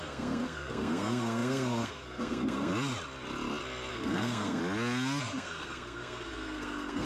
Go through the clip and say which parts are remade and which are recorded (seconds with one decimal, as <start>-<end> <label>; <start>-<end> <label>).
0.0-2.7 remade; 2.7-3.9 recorded; 3.9-4.6 remade; 4.6-5.2 recorded; 5.2-7.0 remade